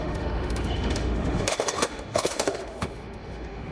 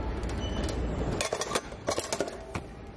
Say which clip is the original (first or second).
second